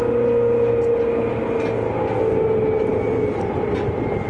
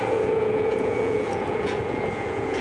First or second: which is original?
first